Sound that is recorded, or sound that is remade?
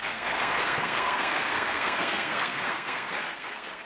remade